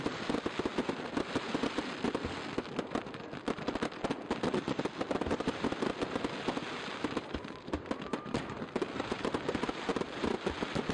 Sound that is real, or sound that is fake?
real